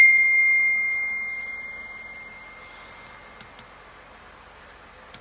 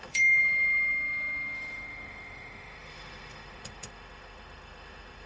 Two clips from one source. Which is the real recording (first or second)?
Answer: first